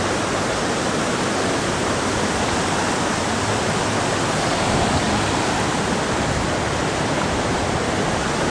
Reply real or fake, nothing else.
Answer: real